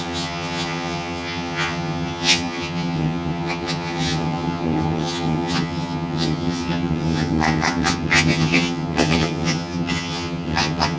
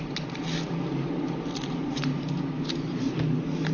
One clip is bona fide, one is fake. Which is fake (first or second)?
first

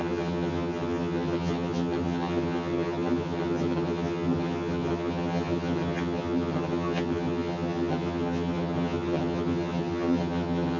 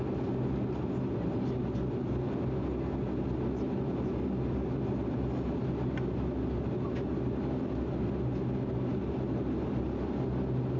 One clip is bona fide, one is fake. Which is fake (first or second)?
first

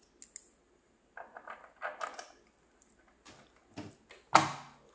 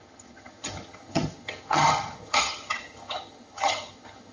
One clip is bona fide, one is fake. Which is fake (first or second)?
second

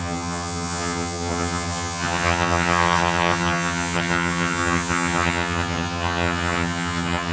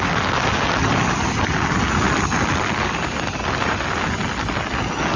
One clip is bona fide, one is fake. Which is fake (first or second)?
first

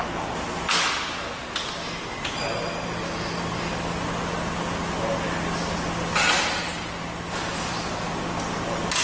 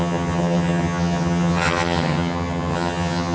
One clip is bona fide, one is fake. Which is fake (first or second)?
second